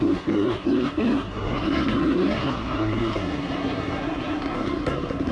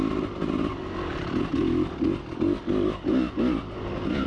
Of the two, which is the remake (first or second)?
first